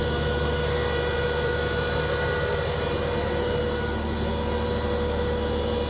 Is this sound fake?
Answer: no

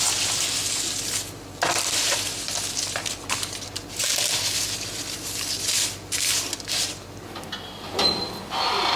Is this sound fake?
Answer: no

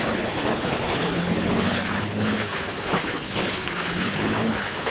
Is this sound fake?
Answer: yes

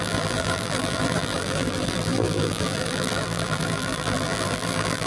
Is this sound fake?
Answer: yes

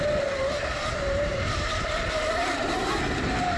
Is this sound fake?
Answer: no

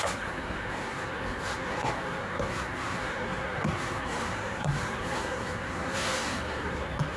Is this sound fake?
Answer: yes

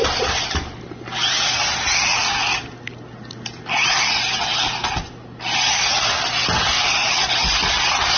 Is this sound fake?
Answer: no